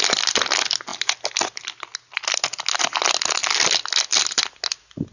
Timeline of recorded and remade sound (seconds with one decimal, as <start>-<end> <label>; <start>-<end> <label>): 0.0-5.1 recorded